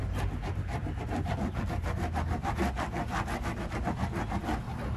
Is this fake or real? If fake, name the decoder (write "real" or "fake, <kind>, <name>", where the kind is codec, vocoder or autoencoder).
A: real